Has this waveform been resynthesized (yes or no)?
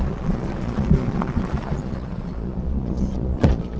yes